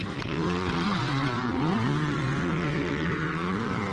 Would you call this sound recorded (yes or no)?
no